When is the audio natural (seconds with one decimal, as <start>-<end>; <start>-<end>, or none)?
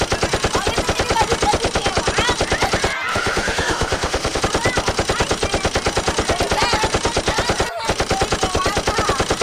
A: 0.0-3.1; 4.4-9.4